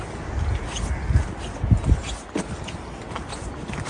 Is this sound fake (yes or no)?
no